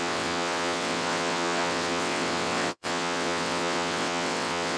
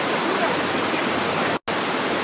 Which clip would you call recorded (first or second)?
second